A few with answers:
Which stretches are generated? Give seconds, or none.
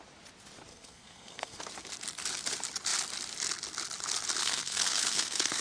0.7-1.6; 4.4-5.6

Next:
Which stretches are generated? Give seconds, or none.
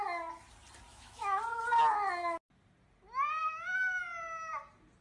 0.9-1.4; 3.4-4.0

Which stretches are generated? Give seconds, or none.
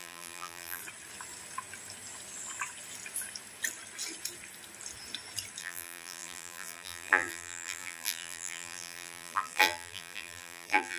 0.0-0.8; 5.6-11.0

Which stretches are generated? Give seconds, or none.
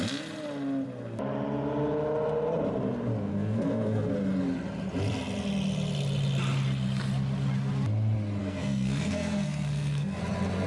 3.3-4.1; 8.4-10.2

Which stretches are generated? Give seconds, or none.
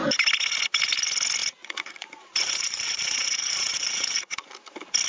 1.4-4.5